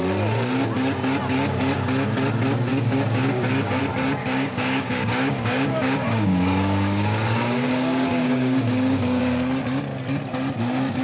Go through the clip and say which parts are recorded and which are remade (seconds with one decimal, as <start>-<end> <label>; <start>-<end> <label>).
0.0-2.7 recorded; 2.7-3.8 remade; 3.8-4.2 recorded; 4.2-9.2 remade; 9.2-11.0 recorded